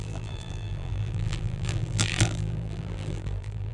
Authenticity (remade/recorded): remade